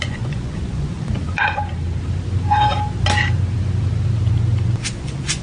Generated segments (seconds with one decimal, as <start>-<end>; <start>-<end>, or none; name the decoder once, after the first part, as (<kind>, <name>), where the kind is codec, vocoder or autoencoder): 0.0-1.7 (vocoder, Vocos); 4.9-5.4

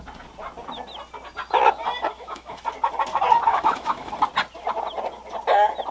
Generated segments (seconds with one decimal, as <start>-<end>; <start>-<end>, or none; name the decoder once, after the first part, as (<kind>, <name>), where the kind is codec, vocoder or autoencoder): 2.1-2.6 (autoencoder, DAC-VAE); 3.5-4.1

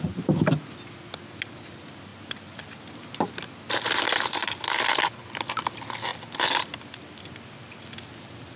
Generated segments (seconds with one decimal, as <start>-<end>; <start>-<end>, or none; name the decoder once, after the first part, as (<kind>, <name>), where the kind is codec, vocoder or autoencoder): none

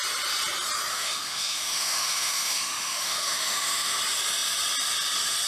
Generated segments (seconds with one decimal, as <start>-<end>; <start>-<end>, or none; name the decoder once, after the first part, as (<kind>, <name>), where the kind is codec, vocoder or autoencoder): 0.9-4.0 (autoencoder, DAC-VAE)

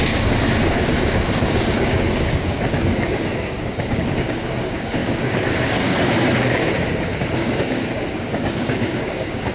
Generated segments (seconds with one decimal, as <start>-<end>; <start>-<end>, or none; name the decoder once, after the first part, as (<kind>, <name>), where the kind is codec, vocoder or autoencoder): 0.0-9.5 (codec, DAC)

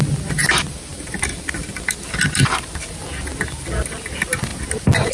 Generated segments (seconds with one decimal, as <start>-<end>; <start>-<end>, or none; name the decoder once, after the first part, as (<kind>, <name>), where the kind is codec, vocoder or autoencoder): none

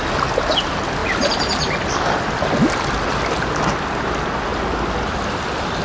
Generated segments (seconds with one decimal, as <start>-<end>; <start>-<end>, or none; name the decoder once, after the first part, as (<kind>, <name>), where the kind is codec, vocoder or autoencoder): none

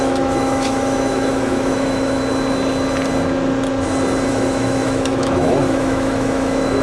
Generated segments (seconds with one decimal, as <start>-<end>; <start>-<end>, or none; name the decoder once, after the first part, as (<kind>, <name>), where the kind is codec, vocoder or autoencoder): 0.0-2.2 (autoencoder, DAC-VAE); 4.3-6.8